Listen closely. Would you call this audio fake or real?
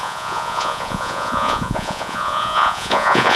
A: fake